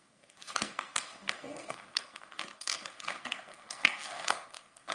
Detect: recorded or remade remade